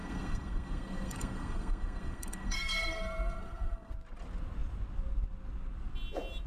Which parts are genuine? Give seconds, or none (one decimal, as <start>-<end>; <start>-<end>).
3.9-6.5